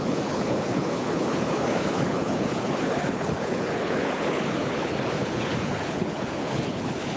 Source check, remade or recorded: remade